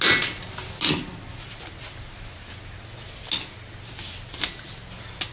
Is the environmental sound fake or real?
real